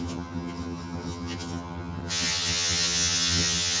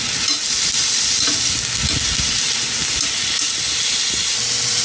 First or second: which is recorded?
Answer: second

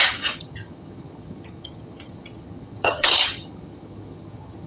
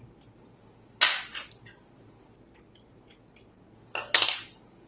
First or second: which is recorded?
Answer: second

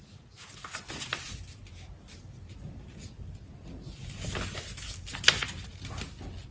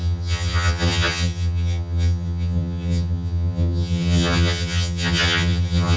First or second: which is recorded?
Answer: first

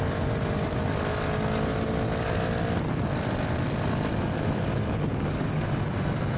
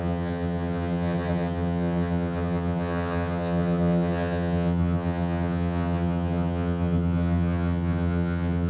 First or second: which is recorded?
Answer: first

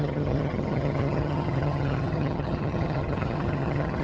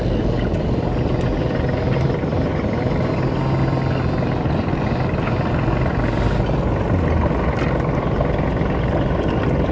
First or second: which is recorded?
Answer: second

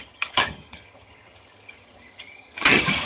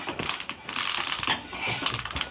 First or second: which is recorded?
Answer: second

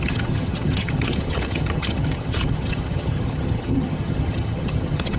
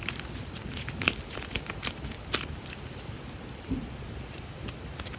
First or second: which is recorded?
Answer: second